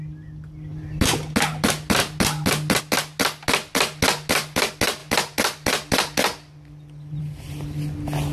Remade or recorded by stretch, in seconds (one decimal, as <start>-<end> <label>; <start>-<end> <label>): 0.0-8.3 recorded